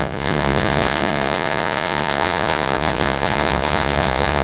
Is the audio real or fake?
fake